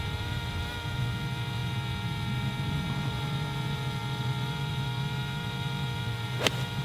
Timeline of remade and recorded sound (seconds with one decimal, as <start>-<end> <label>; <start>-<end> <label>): 0.0-6.8 recorded